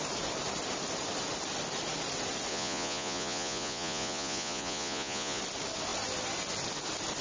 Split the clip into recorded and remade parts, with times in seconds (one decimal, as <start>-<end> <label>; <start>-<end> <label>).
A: 0.0-2.5 recorded; 2.5-5.4 remade; 5.4-7.2 recorded

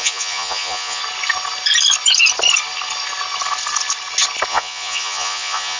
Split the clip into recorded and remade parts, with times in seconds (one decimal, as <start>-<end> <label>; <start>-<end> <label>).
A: 0.0-1.0 remade; 1.0-4.5 recorded; 4.5-5.8 remade

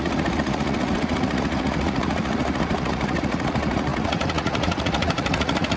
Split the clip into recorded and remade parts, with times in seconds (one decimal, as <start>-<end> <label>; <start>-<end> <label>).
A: 0.0-5.8 remade

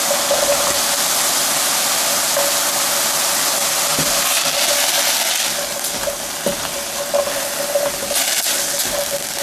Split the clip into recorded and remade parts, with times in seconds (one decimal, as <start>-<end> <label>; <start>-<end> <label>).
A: 0.0-9.4 recorded

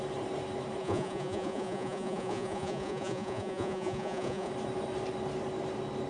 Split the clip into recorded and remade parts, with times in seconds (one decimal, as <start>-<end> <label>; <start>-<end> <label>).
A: 0.0-0.8 recorded; 0.8-4.5 remade; 4.5-6.1 recorded

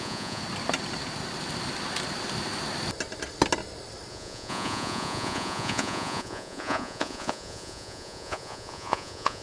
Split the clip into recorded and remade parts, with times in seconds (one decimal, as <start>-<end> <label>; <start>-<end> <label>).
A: 0.0-0.4 remade; 0.4-4.1 recorded; 4.1-9.4 remade

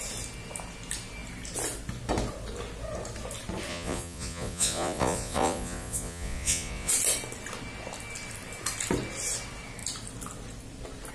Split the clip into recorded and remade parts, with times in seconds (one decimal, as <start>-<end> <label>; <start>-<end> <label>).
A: 0.0-3.7 recorded; 3.7-6.9 remade; 6.9-11.1 recorded

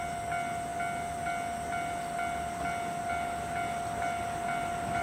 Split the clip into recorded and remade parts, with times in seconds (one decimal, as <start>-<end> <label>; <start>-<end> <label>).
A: 0.0-5.0 recorded